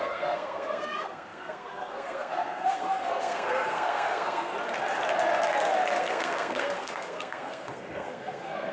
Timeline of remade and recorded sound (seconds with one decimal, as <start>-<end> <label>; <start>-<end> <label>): 0.0-4.5 remade; 4.5-6.0 recorded; 6.0-8.7 remade